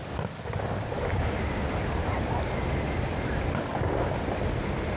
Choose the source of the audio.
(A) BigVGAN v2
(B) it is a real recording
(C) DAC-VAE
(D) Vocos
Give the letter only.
B